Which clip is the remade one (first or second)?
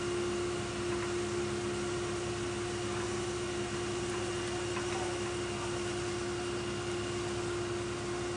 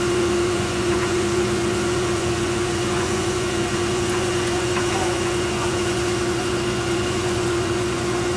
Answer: second